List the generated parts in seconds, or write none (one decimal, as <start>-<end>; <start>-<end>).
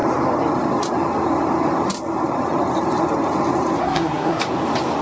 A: 3.8-4.4